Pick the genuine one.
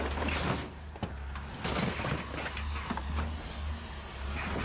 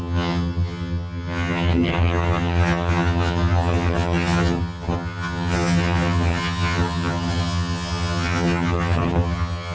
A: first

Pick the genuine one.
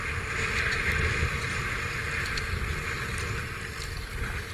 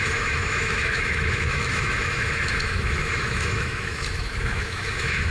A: first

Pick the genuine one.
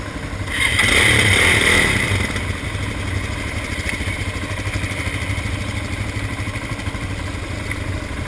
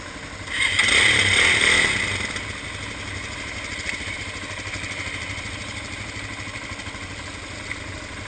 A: second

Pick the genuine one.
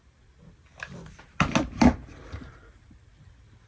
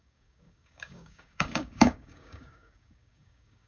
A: first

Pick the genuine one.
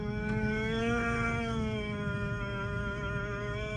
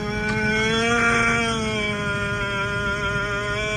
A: second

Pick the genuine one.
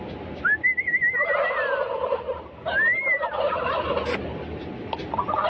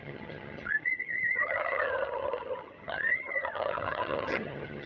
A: first